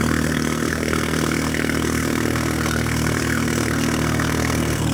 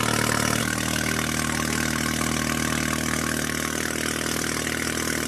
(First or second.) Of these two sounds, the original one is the second